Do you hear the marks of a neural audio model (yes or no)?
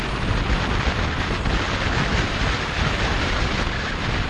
no